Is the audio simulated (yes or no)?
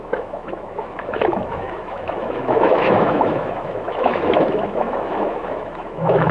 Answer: yes